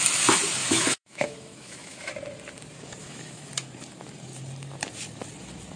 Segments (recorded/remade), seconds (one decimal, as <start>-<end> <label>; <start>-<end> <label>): 0.0-0.6 recorded; 0.6-2.1 remade; 2.1-3.0 recorded; 3.0-3.5 remade; 3.5-5.8 recorded